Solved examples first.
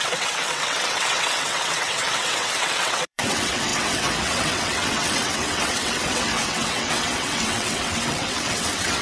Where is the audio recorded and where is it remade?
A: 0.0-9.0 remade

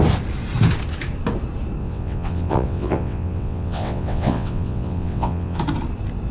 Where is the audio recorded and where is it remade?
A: 0.0-1.8 recorded; 1.8-5.6 remade; 5.6-6.3 recorded

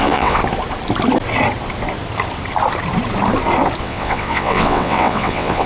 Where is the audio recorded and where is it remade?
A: 0.0-0.4 remade; 0.4-3.8 recorded; 3.8-5.7 remade

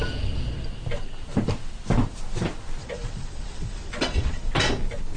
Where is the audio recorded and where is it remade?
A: 0.0-2.8 recorded; 2.8-4.5 remade; 4.5-5.2 recorded

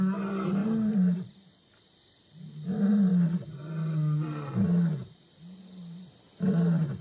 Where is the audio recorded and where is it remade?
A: 0.0-7.0 recorded

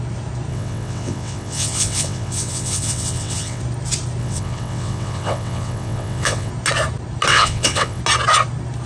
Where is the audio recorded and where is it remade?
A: 0.0-0.5 recorded; 0.5-3.6 remade; 3.6-4.2 recorded; 4.2-6.5 remade; 6.5-7.3 recorded; 7.3-8.0 remade; 8.0-8.9 recorded

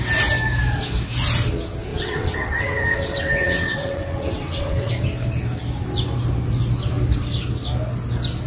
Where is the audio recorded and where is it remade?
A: 0.0-1.9 recorded; 1.9-4.9 remade; 4.9-8.5 recorded